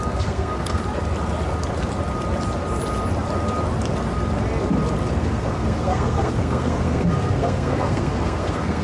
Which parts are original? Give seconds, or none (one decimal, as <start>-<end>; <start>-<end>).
0.8-5.1